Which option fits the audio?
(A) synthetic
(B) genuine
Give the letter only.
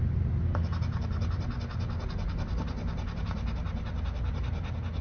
B